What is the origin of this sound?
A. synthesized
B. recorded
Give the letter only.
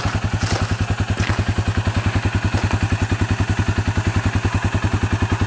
B